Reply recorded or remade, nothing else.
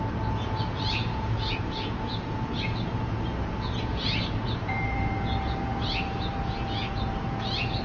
remade